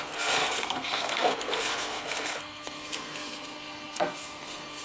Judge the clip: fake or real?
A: fake